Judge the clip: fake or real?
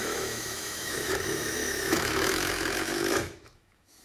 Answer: fake